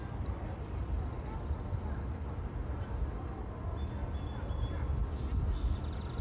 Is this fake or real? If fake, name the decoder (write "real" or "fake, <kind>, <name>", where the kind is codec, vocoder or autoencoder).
real